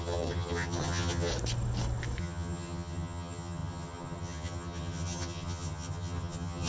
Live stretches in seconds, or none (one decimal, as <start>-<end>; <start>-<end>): 1.3-2.2

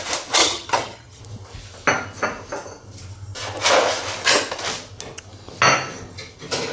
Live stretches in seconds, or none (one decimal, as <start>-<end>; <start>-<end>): 0.0-0.4; 1.2-6.7

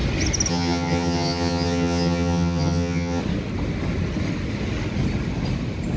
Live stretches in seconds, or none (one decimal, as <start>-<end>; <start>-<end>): 0.0-0.5; 3.2-6.0

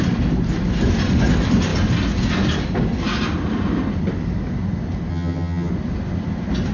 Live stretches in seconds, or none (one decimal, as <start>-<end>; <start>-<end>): 0.0-5.1; 5.7-6.7

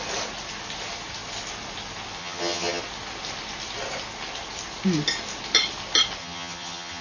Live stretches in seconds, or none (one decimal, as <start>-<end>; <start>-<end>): 0.0-2.2; 2.8-6.2

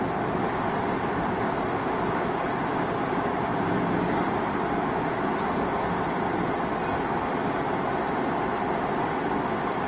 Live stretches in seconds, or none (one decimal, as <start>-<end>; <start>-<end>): 0.0-9.9

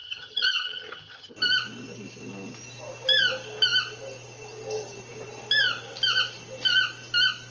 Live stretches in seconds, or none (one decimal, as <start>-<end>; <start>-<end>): 1.3-7.5